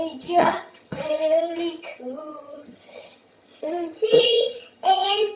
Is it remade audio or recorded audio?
remade